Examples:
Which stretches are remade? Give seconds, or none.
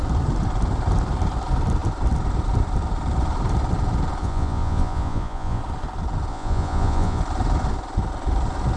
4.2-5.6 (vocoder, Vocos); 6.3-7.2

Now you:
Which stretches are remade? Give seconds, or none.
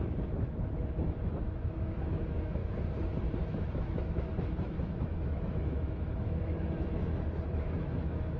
0.0-2.6 (autoencoder, DAC-VAE); 3.3-8.4